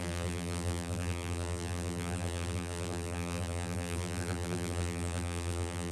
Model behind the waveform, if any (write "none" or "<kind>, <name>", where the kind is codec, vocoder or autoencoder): vocoder, BigVGAN v2